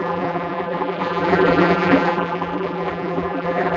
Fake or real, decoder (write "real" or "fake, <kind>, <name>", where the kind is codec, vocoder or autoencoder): fake, vocoder, BigVGAN v2